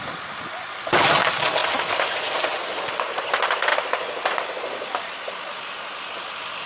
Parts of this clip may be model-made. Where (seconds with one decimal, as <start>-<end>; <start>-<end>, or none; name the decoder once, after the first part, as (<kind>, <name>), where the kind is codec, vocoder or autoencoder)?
none